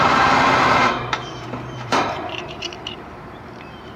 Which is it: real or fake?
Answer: fake